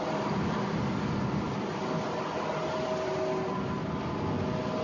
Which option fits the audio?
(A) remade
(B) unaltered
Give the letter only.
B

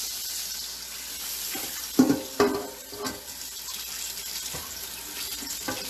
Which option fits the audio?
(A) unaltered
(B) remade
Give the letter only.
A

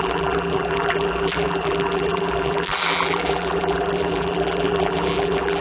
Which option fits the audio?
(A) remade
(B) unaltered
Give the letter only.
A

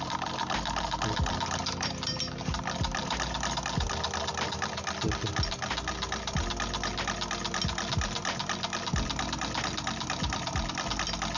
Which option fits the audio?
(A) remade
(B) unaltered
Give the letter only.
B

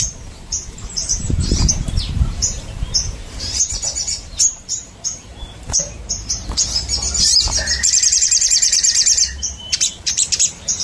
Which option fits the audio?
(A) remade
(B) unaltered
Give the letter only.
A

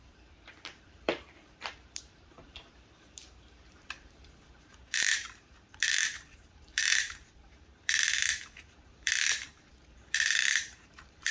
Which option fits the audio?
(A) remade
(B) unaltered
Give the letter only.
A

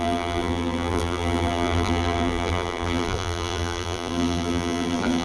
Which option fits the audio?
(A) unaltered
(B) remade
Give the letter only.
B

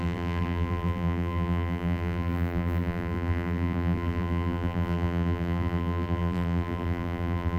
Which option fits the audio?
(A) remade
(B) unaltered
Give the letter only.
A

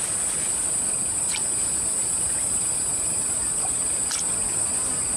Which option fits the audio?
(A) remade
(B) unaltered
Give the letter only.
B